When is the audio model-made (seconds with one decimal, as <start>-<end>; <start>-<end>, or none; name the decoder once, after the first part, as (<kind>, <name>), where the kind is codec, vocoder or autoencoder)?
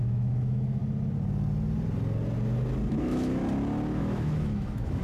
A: 0.0-0.8 (autoencoder, DAC-VAE); 2.9-3.4; 4.0-5.0